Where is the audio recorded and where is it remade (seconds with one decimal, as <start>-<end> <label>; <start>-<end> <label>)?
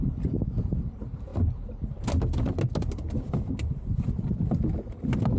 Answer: 0.0-5.4 recorded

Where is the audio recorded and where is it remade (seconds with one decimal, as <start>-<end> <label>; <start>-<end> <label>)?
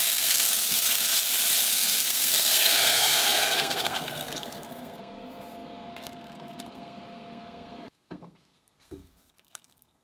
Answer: 0.0-1.1 remade; 1.1-1.7 recorded; 1.7-10.0 remade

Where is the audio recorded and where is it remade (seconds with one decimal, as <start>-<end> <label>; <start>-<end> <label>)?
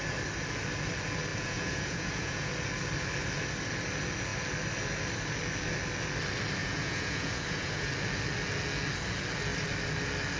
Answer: 0.0-1.3 recorded; 1.3-2.5 remade; 2.5-6.6 recorded; 6.6-7.9 remade; 7.9-10.4 recorded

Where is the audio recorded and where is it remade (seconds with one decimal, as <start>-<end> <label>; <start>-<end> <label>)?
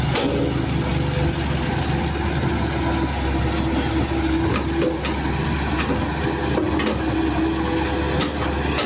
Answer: 0.0-8.9 recorded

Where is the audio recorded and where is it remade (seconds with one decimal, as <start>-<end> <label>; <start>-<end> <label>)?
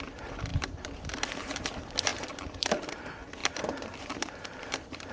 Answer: 0.0-5.1 remade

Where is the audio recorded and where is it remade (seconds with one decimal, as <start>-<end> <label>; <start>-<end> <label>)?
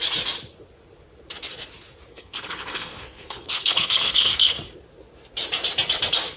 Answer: 0.0-2.1 recorded; 2.1-4.6 remade; 4.6-6.4 recorded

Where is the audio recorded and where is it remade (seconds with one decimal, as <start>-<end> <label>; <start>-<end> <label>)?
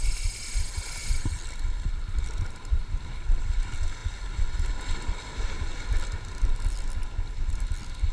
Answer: 0.0-1.0 recorded; 1.0-3.5 remade; 3.5-8.1 recorded